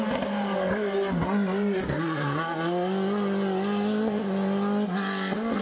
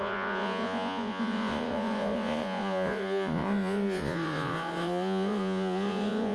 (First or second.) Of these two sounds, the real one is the first